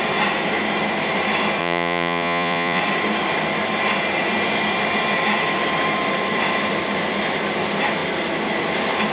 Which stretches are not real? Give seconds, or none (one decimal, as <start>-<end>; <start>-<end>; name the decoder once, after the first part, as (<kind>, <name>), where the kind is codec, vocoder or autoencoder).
1.6-2.8 (vocoder, Vocos)